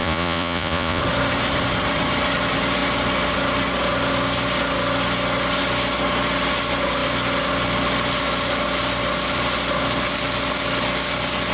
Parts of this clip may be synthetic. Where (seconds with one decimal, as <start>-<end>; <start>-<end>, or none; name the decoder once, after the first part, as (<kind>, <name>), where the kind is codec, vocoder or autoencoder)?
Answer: 0.0-1.0 (vocoder, Vocos)